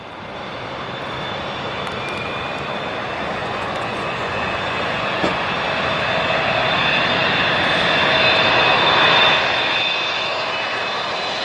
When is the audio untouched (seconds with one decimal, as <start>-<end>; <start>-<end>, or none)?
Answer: 0.0-3.4; 5.5-11.4